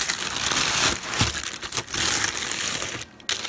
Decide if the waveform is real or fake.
real